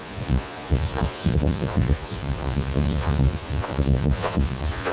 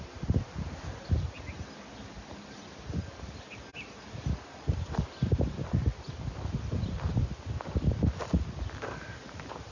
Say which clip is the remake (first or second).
first